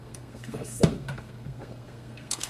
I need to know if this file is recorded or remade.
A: remade